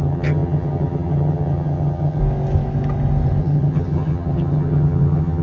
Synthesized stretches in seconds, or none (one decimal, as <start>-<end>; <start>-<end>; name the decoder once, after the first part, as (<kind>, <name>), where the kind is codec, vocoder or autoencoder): 0.0-2.2 (vocoder, HiFi-GAN); 3.4-5.4

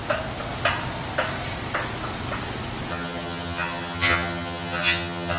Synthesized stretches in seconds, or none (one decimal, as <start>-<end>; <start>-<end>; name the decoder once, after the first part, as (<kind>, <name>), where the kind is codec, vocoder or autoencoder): 2.9-5.4 (vocoder, HiFi-GAN)